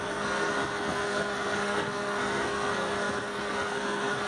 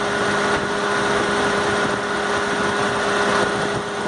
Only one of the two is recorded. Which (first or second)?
second